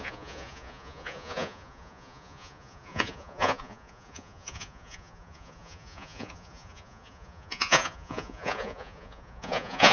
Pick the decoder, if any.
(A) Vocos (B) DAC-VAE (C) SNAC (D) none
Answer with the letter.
A